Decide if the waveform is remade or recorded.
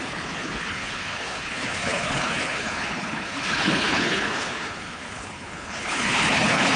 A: remade